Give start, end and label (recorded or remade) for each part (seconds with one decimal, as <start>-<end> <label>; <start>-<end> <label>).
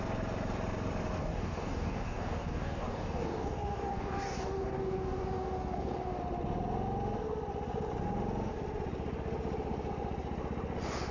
0.0-1.2 recorded; 1.2-6.2 remade; 6.2-11.1 recorded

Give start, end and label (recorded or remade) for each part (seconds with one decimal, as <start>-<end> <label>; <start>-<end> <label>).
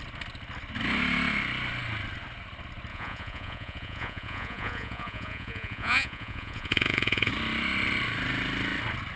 0.0-2.9 recorded; 2.9-7.3 remade; 7.3-9.2 recorded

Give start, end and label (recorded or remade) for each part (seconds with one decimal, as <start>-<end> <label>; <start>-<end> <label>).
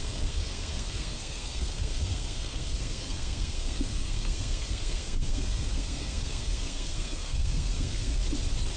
0.0-8.2 remade; 8.2-8.8 recorded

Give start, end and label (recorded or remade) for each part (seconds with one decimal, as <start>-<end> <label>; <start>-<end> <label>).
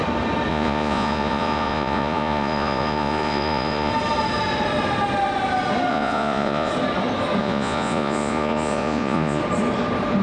0.0-0.5 recorded; 0.5-3.9 remade; 3.9-5.9 recorded; 5.9-6.7 remade; 6.7-7.4 recorded; 7.4-9.4 remade; 9.4-10.2 recorded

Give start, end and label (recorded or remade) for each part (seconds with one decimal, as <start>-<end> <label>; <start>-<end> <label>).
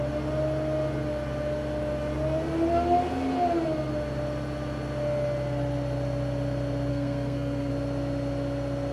0.0-6.9 recorded; 6.9-7.7 remade; 7.7-8.9 recorded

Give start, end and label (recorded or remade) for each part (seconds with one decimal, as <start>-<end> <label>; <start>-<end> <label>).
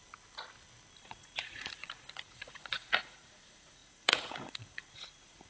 0.0-1.0 recorded; 1.0-5.5 remade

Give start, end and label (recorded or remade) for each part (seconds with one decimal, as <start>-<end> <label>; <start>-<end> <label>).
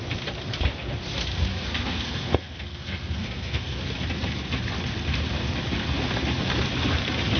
0.0-1.5 recorded; 1.5-3.8 remade; 3.8-7.4 recorded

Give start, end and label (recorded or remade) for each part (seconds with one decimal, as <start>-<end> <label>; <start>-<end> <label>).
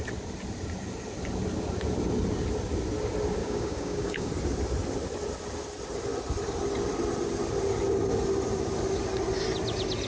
0.0-3.4 recorded; 3.4-4.3 remade; 4.3-10.1 recorded